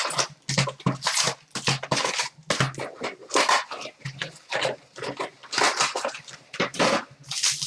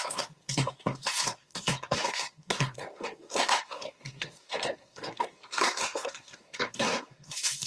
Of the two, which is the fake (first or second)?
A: second